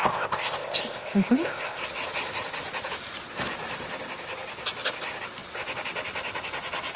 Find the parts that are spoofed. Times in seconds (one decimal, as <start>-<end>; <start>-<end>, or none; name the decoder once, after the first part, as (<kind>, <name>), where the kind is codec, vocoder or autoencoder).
0.0-1.8 (codec, ZipCodec)